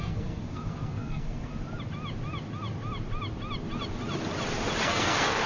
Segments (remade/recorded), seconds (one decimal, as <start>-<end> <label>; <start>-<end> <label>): 0.0-1.5 remade; 1.5-4.8 recorded; 4.8-5.5 remade